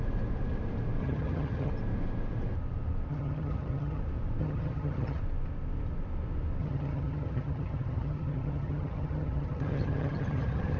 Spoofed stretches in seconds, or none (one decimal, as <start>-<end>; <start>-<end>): 1.0-1.7; 3.1-4.0; 4.4-5.2; 6.6-10.8